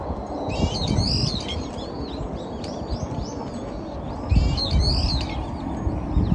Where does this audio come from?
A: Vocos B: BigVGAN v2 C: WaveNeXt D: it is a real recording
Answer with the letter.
D